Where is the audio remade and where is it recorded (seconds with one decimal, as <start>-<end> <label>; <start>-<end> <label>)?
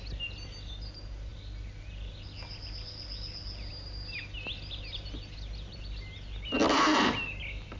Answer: 0.0-7.8 recorded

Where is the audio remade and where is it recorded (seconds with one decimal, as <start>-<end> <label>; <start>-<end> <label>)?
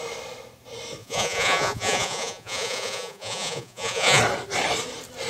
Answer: 0.0-1.0 recorded; 1.0-4.2 remade; 4.2-5.3 recorded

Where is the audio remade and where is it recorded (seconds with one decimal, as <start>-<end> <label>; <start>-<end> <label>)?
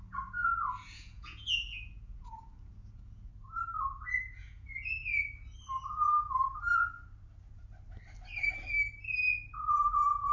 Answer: 0.0-3.3 remade; 3.3-4.4 recorded; 4.4-5.1 remade; 5.1-9.7 recorded; 9.7-10.3 remade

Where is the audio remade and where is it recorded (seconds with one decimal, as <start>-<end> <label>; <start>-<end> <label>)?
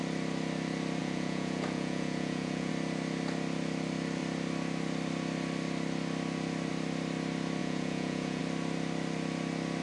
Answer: 0.0-1.0 recorded; 1.0-2.7 remade; 2.7-7.6 recorded; 7.6-8.4 remade; 8.4-9.8 recorded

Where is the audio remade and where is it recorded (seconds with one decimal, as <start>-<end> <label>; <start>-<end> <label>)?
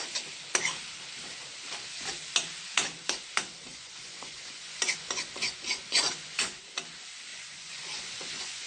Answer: 0.0-3.7 recorded; 3.7-6.6 remade; 6.6-7.3 recorded; 7.3-8.7 remade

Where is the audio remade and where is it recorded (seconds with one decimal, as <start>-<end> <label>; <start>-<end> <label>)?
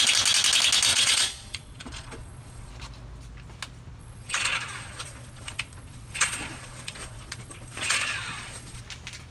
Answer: 0.0-0.9 recorded; 0.9-2.7 remade; 2.7-4.0 recorded; 4.0-8.8 remade; 8.8-9.3 recorded